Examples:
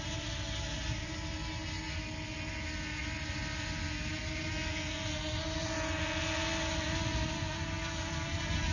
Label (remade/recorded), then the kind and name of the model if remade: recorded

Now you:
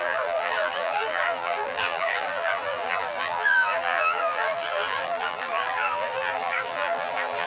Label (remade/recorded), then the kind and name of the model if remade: remade, vocoder, BigVGAN v2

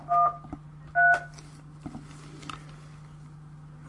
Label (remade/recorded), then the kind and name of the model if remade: recorded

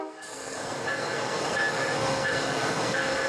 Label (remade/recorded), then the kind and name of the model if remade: remade, codec, SNAC